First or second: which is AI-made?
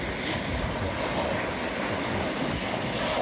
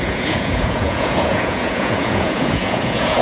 second